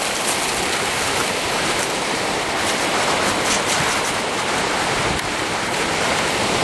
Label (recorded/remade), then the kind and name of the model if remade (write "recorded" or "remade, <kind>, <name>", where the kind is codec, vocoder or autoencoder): recorded